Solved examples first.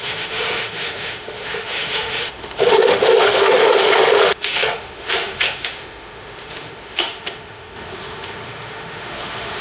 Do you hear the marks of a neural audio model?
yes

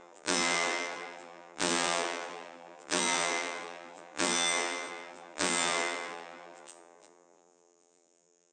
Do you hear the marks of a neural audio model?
yes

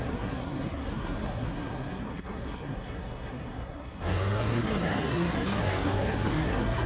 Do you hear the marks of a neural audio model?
yes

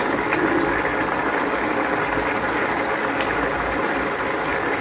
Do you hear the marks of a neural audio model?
no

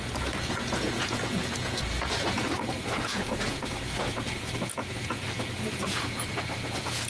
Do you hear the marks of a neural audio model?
yes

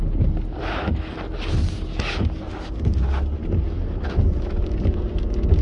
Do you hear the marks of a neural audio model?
no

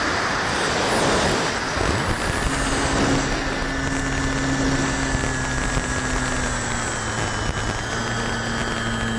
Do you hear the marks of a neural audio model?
no